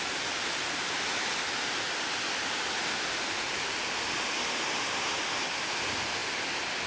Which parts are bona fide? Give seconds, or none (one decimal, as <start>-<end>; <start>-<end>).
0.0-6.9